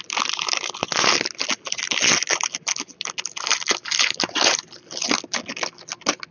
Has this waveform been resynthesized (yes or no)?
no